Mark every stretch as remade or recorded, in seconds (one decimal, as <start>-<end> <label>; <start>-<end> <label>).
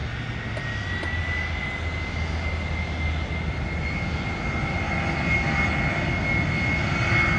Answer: 0.0-7.4 recorded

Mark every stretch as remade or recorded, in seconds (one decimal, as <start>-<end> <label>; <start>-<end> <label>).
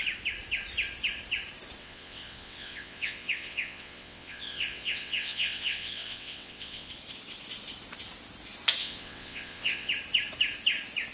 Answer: 0.0-1.8 recorded; 1.8-6.9 remade; 6.9-8.8 recorded; 8.8-9.9 remade; 9.9-11.1 recorded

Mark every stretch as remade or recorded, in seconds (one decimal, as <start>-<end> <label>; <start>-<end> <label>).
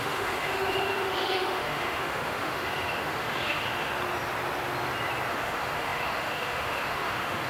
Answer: 0.0-3.9 remade; 3.9-5.3 recorded; 5.3-7.5 remade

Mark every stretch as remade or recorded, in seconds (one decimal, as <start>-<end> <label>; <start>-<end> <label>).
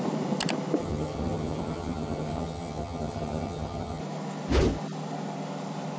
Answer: 0.0-0.8 recorded; 0.8-4.0 remade; 4.0-6.0 recorded